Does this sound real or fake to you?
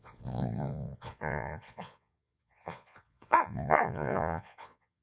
fake